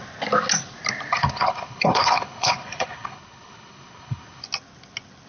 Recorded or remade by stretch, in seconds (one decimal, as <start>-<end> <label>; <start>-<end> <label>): 0.0-1.2 recorded; 1.2-4.4 remade; 4.4-5.3 recorded